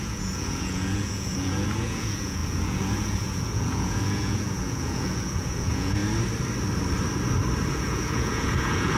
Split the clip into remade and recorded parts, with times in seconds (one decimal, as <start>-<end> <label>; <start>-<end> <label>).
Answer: 0.0-6.0 remade; 6.0-7.7 recorded; 7.7-9.0 remade